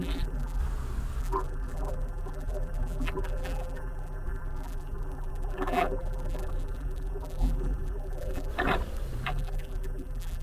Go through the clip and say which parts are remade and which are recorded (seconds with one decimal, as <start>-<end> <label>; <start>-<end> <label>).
0.0-0.6 remade; 0.6-1.2 recorded; 1.2-8.5 remade; 8.5-9.3 recorded; 9.3-10.4 remade